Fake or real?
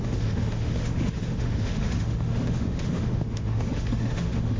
fake